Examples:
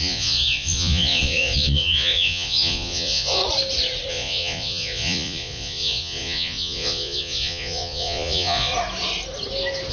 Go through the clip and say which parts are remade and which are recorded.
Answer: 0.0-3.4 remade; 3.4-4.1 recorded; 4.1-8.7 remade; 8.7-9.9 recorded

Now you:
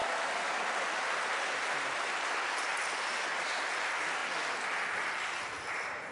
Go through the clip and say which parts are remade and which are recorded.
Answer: 0.0-6.1 recorded

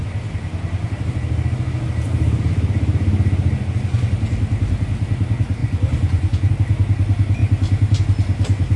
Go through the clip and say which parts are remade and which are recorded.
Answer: 0.0-5.6 recorded; 5.6-6.5 remade; 6.5-8.8 recorded

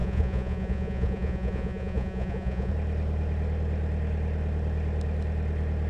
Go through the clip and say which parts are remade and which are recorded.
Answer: 0.0-2.7 remade; 2.7-5.9 recorded

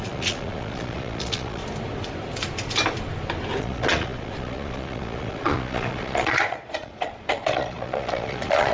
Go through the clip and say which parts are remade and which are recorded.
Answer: 0.0-1.6 remade; 1.6-3.6 recorded; 3.6-8.7 remade

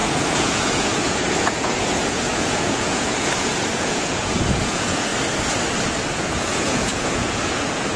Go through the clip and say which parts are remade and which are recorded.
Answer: 0.0-5.1 remade; 5.1-6.2 recorded; 6.2-8.0 remade